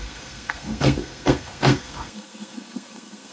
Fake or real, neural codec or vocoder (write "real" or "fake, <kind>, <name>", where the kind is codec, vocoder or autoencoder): fake, codec, SNAC